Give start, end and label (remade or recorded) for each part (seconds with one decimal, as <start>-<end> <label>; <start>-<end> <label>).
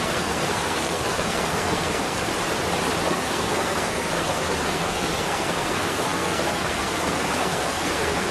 0.0-2.3 remade; 2.3-3.1 recorded; 3.1-8.3 remade